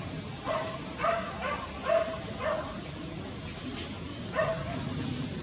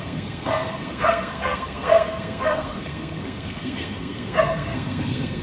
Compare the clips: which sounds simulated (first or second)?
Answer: second